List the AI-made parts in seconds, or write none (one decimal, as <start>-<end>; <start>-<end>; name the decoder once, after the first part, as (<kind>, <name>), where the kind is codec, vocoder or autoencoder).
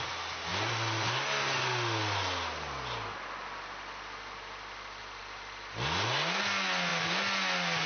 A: none